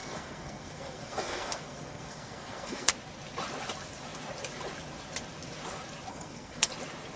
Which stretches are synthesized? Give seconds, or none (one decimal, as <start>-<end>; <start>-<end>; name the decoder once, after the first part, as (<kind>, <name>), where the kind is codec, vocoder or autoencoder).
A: 0.0-2.9 (codec, SNAC); 6.1-6.7